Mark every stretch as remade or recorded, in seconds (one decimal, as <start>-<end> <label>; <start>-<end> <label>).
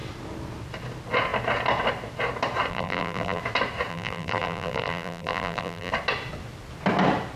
0.0-2.7 recorded; 2.7-3.4 remade; 3.4-3.9 recorded; 3.9-5.9 remade; 5.9-7.4 recorded